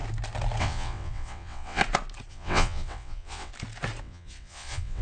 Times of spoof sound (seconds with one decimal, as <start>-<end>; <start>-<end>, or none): 0.6-1.8; 2.3-3.5; 4.0-5.0